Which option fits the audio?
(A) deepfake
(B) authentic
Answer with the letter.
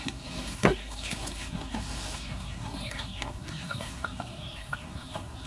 A